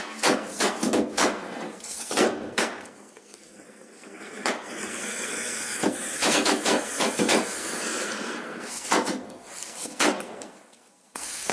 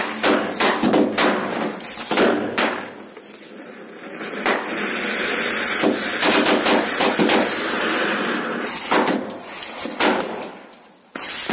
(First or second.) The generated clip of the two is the first